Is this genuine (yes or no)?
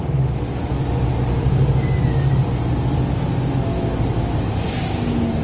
yes